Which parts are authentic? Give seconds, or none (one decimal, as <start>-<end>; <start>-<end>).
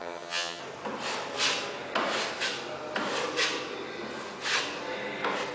0.6-5.5